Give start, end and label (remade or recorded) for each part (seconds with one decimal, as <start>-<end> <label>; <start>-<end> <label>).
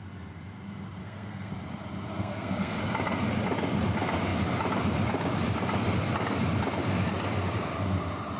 0.0-1.0 recorded; 1.0-1.5 remade; 1.5-2.2 recorded; 2.2-2.8 remade; 2.8-8.4 recorded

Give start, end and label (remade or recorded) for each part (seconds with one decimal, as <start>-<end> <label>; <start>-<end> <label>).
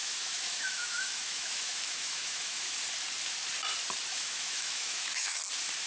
0.0-2.8 remade; 2.8-4.1 recorded; 4.1-5.4 remade; 5.4-5.9 recorded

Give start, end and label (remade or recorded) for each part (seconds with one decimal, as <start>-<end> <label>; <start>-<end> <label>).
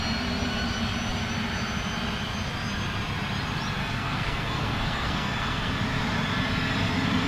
0.0-3.8 recorded; 3.8-5.7 remade; 5.7-7.3 recorded